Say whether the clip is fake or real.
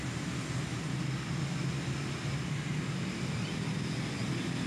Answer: real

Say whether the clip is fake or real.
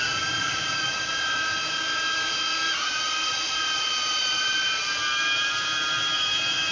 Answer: fake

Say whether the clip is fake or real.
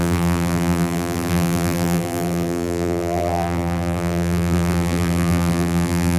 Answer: fake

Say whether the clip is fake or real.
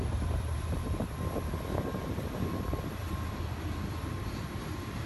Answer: real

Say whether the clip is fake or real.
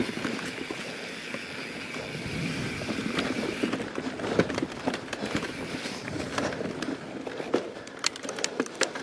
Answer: fake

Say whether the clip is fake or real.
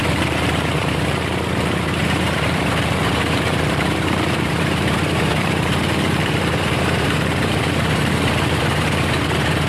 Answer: fake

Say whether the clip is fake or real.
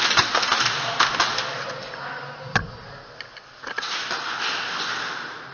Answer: real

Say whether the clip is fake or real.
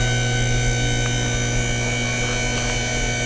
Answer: real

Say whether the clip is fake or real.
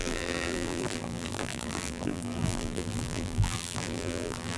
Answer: fake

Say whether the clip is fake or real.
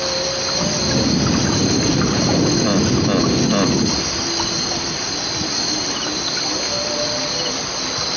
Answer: real